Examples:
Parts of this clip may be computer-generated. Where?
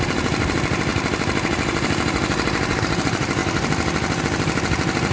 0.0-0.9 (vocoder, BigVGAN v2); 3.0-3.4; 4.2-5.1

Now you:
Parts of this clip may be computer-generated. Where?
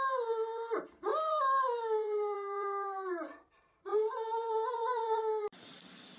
0.0-6.2 (vocoder, BigVGAN v2)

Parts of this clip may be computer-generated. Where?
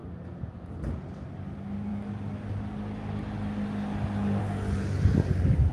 none